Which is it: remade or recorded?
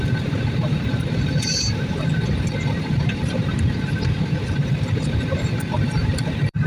remade